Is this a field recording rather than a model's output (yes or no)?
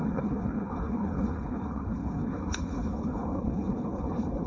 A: no